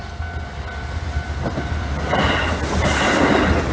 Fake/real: real